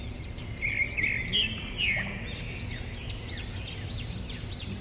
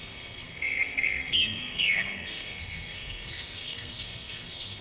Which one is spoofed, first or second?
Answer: second